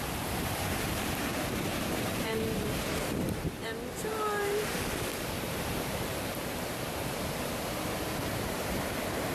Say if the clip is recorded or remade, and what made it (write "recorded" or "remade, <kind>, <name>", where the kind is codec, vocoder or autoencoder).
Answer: remade, vocoder, BigVGAN v2